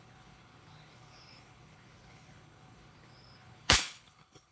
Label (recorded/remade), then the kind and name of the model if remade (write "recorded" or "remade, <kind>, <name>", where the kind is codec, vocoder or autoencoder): remade, codec, HILCodec